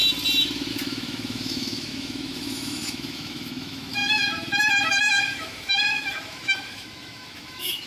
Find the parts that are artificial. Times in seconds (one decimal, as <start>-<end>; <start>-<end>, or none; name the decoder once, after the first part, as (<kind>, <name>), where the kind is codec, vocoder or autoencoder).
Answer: 0.7-7.9 (autoencoder, DAC-VAE)